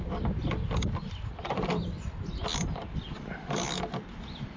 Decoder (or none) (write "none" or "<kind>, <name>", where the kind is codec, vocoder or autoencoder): none